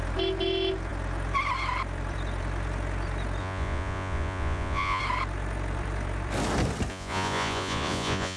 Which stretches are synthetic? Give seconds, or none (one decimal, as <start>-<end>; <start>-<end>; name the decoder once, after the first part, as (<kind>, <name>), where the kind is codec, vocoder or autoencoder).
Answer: 3.4-5.0 (vocoder, Vocos); 6.9-8.4